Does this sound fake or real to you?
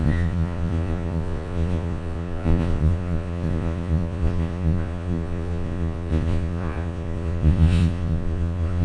fake